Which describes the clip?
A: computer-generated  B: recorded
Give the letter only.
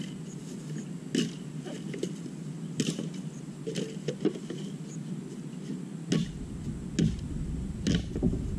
B